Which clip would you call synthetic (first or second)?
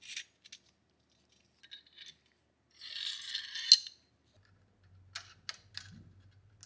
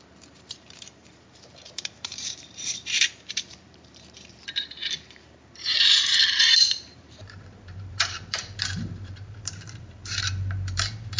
second